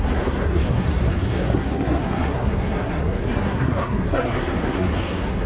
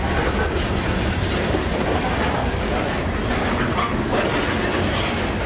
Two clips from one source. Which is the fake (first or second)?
first